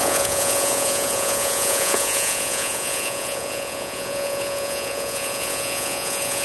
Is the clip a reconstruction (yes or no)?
yes